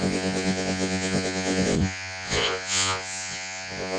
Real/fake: fake